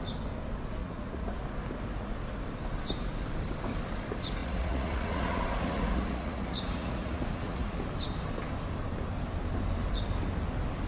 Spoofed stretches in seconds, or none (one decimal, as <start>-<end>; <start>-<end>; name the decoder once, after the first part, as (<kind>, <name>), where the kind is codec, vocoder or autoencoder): 0.8-1.4 (vocoder, Vocos); 4.4-7.8